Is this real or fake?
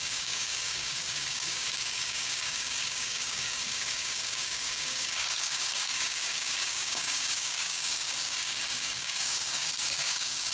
fake